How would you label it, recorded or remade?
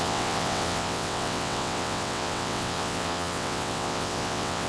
remade